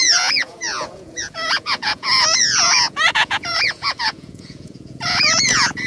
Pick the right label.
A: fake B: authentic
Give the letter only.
A